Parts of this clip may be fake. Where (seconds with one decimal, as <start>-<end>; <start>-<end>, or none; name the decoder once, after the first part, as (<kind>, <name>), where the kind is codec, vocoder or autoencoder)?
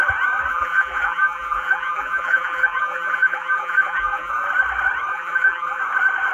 0.5-4.3 (vocoder, BigVGAN v2); 5.1-5.8